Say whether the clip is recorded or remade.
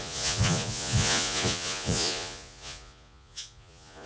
remade